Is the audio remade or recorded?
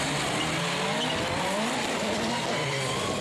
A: recorded